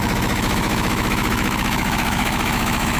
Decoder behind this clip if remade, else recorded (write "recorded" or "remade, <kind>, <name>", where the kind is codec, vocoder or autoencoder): remade, autoencoder, DAC-VAE